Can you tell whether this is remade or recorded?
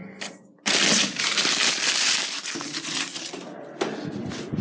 recorded